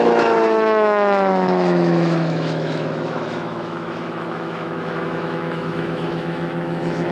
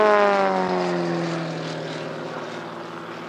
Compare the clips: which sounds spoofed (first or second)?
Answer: first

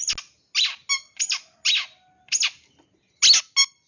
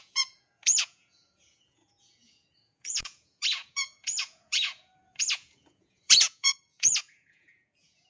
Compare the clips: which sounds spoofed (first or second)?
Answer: second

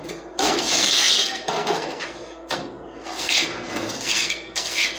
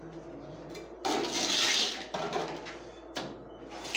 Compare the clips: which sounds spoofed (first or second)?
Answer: first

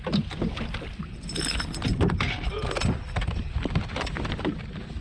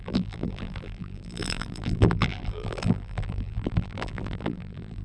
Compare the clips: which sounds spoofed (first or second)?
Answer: second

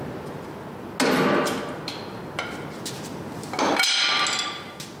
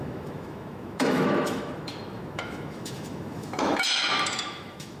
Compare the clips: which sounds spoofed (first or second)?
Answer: second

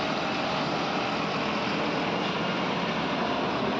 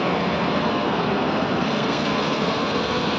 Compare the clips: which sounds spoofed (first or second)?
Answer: second